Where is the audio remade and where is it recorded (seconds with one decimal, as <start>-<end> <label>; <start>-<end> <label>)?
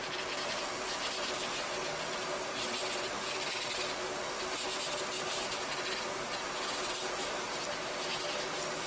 0.0-8.9 recorded